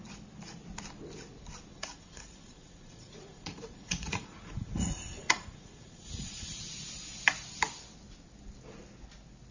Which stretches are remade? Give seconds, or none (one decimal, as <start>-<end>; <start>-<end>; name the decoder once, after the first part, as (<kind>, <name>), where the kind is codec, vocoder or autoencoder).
1.7-6.6 (vocoder, Vocos)